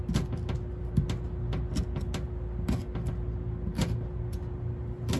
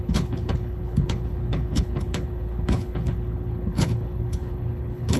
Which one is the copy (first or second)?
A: second